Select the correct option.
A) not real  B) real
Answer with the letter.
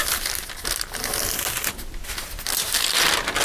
B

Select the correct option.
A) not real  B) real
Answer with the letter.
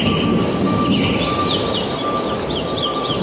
B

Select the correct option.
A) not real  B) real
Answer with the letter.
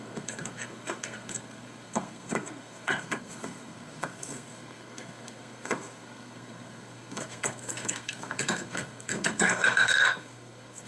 A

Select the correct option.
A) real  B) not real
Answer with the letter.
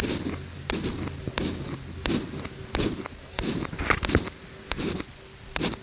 B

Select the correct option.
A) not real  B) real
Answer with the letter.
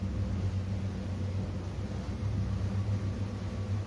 B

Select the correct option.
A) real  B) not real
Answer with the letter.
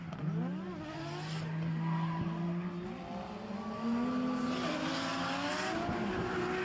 A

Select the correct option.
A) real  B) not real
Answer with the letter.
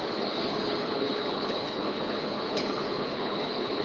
B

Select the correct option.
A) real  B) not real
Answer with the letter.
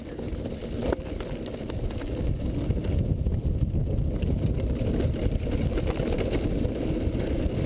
A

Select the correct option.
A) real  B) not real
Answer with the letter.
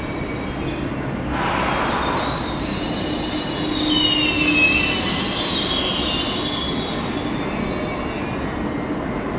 A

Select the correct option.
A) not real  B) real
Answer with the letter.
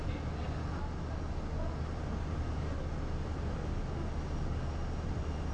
B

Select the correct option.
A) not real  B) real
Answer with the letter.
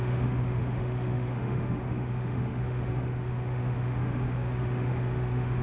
A